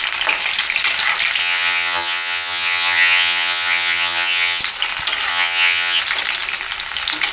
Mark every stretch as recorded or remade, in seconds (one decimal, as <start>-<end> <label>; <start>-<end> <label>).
0.0-1.4 recorded; 1.4-4.6 remade; 4.6-5.3 recorded; 5.3-6.0 remade; 6.0-7.3 recorded